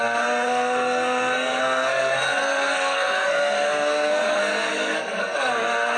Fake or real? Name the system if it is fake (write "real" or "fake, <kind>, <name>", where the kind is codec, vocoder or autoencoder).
fake, codec, SNAC